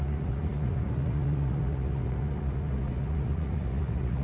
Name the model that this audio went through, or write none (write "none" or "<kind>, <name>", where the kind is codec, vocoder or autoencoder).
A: vocoder, Vocos